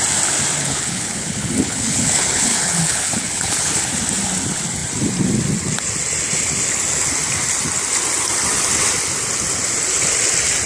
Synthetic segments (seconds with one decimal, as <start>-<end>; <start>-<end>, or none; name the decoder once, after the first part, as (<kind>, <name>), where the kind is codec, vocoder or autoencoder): 0.6-3.9 (codec, HILCodec)